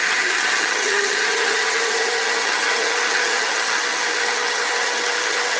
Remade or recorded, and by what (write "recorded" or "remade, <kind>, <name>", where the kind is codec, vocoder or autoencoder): remade, vocoder, HiFi-GAN